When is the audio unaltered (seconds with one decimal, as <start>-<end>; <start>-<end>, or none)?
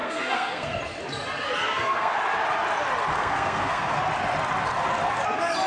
0.8-1.6; 2.2-3.1; 4.0-5.7